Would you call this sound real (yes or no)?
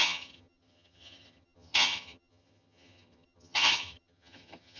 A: no